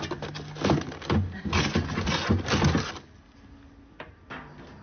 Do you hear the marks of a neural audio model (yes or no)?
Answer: no